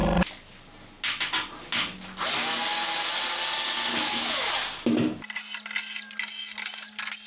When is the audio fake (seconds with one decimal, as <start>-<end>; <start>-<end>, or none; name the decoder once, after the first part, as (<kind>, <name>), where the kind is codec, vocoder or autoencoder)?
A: 3.9-4.5 (autoencoder, DAC-VAE)